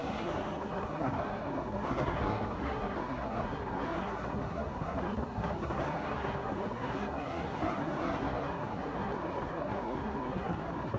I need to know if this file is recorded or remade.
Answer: remade